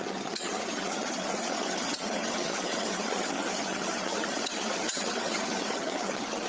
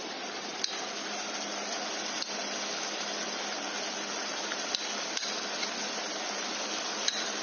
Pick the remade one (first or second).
first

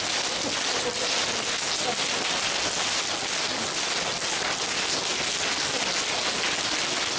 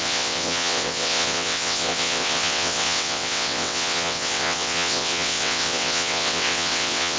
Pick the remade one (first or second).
second